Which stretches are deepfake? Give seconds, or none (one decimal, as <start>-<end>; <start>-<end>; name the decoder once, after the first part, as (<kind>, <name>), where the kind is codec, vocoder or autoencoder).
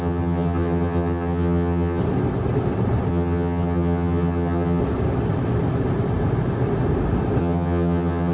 0.0-2.0 (vocoder, HiFi-GAN); 3.1-4.8; 7.4-8.3